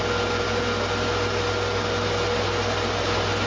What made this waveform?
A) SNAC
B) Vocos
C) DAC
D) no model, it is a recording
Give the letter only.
D